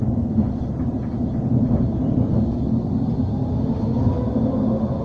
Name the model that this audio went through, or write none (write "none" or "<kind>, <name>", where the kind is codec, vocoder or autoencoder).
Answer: none